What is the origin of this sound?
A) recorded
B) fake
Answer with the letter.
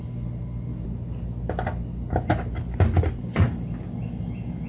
A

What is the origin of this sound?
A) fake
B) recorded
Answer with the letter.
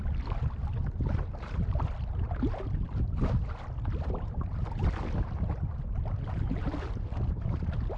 B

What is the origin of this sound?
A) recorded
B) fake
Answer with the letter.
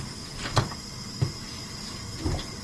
A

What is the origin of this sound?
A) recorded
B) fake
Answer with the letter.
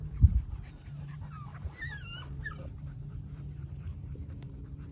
B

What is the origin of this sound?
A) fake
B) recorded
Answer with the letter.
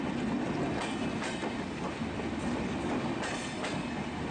B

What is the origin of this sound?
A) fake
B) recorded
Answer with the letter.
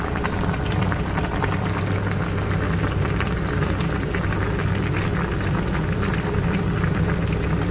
B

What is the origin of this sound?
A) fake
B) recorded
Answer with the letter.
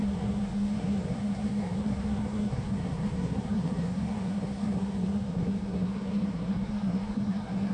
A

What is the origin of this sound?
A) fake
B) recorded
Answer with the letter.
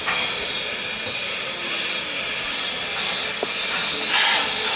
B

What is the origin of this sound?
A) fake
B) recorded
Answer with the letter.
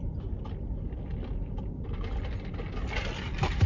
B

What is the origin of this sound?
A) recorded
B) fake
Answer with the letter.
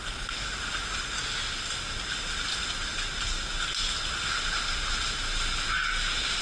A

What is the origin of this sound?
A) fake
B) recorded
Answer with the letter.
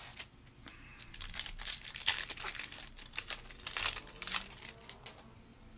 B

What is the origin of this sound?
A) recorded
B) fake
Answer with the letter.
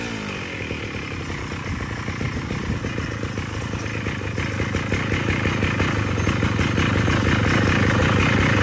A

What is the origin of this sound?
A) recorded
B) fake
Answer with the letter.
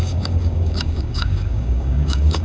B